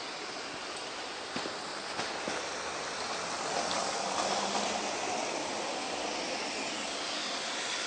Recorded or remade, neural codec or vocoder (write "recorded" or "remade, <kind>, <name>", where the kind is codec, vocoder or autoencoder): recorded